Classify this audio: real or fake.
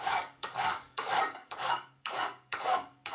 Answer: fake